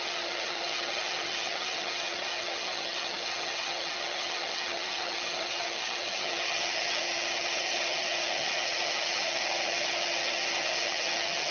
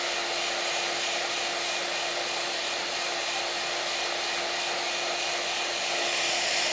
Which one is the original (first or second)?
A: second